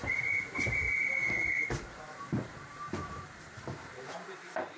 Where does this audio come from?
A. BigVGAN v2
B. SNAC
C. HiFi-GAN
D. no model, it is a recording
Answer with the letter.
A